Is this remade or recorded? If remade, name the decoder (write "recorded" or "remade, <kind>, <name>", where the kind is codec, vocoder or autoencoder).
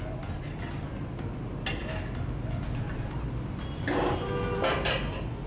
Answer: recorded